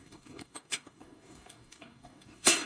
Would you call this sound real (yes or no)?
no